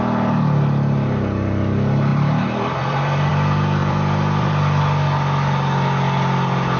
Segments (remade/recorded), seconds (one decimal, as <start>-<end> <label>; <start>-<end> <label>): 0.0-2.1 recorded; 2.1-3.3 remade; 3.3-3.8 recorded; 3.8-4.5 remade; 4.5-6.8 recorded